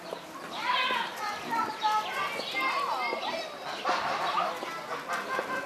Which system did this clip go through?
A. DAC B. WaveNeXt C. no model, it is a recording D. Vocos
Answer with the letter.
C